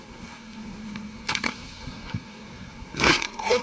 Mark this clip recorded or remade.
remade